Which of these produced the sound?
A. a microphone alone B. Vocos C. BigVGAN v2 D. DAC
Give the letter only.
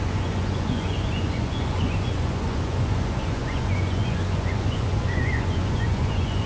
B